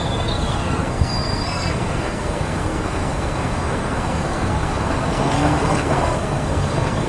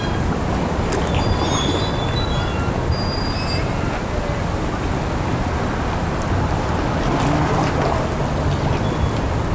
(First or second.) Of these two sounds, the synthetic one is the first